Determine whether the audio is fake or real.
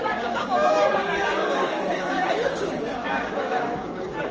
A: fake